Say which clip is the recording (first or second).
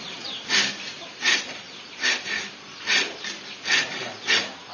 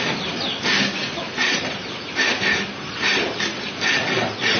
first